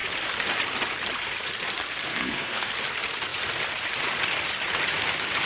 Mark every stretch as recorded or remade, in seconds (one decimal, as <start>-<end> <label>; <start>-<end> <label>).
0.0-2.1 recorded; 2.1-2.7 remade; 2.7-5.5 recorded